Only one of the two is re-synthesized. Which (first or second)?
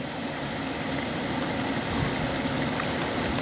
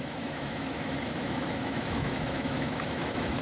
second